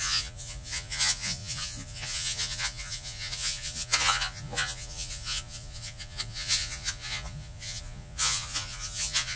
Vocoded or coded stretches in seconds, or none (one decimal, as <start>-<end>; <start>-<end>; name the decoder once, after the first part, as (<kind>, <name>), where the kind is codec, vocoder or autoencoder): 0.0-9.4 (vocoder, Vocos)